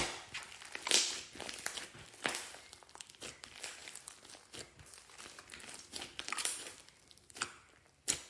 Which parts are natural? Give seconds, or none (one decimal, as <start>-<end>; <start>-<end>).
0.0-8.3